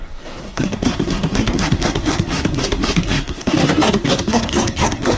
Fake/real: fake